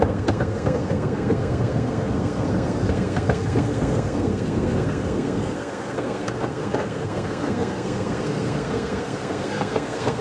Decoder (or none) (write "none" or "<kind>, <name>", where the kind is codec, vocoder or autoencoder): codec, SNAC